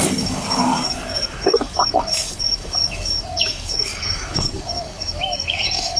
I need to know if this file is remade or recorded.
remade